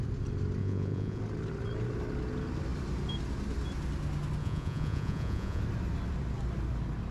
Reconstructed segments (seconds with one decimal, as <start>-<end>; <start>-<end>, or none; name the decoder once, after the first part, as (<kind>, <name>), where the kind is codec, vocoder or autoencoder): 0.6-1.2 (vocoder, Vocos); 4.4-5.6